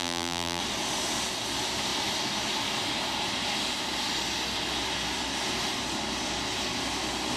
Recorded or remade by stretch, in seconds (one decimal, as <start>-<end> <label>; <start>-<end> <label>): 0.0-0.6 remade; 0.6-7.4 recorded